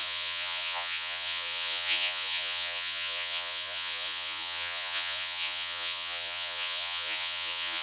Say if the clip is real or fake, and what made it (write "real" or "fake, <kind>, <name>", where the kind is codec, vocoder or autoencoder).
fake, vocoder, Vocos